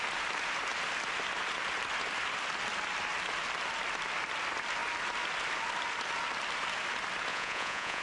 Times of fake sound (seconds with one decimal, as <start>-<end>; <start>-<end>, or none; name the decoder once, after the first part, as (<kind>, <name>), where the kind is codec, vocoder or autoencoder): 7.3-8.0 (vocoder, Vocos)